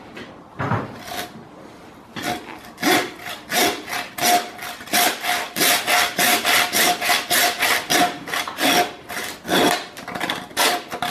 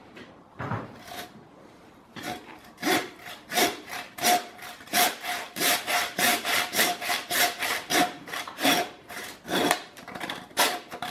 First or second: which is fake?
second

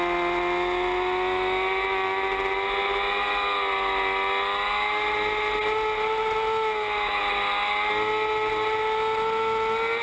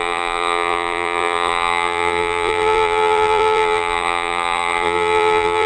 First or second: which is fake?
second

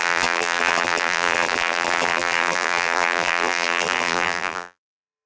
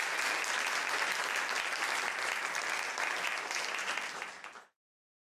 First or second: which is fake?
first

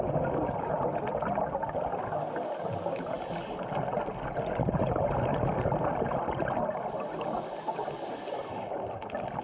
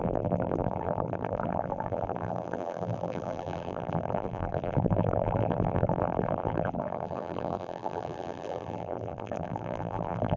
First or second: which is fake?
second